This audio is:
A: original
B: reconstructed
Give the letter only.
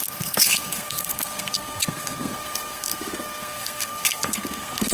B